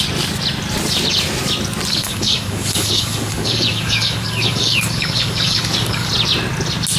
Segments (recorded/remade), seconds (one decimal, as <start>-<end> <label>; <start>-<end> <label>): 0.0-1.9 recorded; 1.9-6.1 remade; 6.1-7.0 recorded